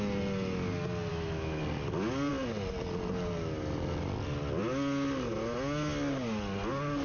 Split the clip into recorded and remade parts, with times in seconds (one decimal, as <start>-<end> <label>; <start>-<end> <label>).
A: 0.0-1.1 recorded; 1.1-1.6 remade; 1.6-7.0 recorded